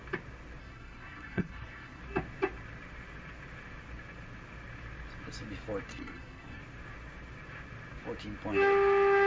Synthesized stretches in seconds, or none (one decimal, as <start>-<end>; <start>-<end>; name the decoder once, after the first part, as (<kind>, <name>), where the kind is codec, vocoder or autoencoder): 0.6-2.0 (codec, SNAC); 5.9-6.6